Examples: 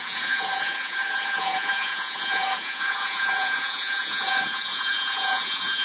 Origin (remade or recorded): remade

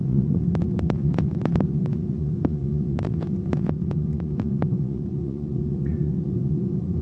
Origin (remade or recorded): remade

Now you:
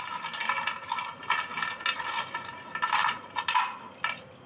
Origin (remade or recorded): recorded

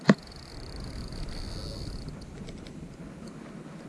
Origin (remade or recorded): recorded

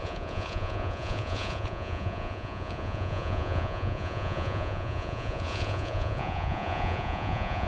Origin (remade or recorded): remade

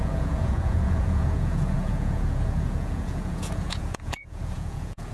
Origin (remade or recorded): remade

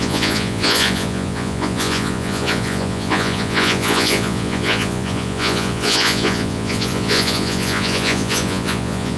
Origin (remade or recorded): remade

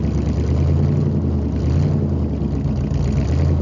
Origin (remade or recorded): recorded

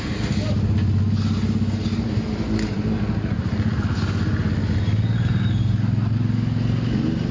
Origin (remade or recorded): recorded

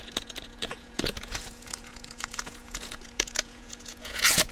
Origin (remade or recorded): remade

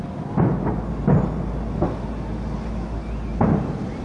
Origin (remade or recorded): recorded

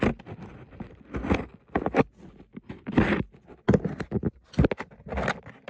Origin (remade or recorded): recorded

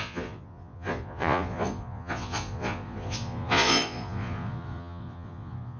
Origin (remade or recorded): remade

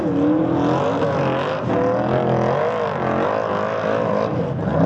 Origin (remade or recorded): recorded